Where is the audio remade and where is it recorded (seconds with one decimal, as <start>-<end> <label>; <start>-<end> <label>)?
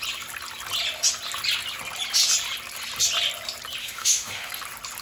0.0-3.8 recorded; 3.8-4.5 remade; 4.5-5.0 recorded